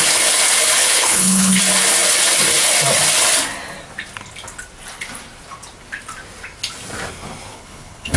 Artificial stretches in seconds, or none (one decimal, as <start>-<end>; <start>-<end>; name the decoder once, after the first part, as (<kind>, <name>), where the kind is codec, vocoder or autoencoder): 0.8-1.6 (codec, HILCodec); 7.5-8.2